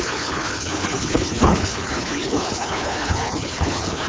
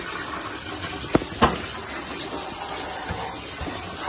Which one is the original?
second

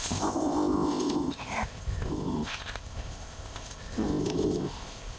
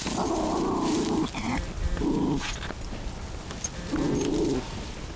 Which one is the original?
second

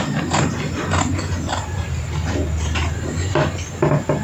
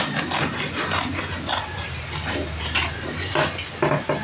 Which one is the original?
second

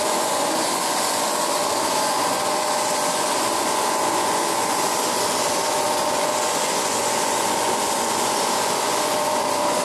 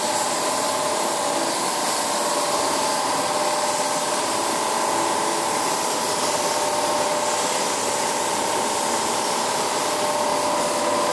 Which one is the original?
second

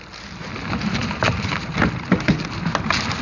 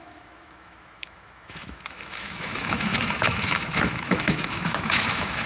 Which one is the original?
first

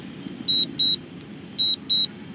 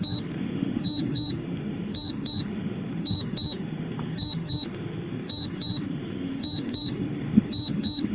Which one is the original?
first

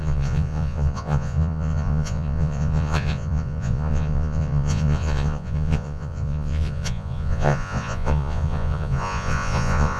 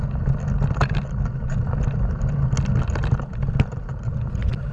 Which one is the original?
second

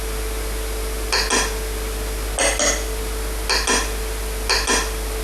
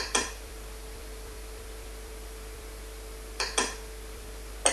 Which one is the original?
first